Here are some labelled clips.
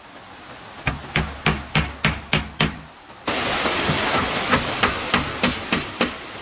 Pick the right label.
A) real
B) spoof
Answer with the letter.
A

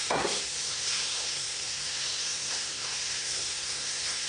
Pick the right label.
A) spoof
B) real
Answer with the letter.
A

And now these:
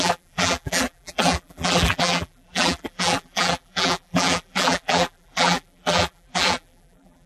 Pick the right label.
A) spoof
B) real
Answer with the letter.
A